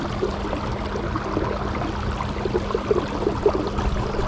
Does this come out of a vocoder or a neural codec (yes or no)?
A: no